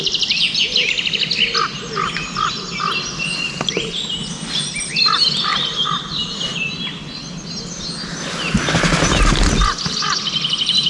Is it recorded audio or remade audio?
recorded